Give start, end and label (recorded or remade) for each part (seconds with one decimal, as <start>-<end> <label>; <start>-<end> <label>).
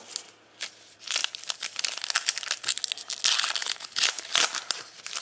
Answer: 0.0-3.6 recorded; 3.6-4.2 remade; 4.2-5.2 recorded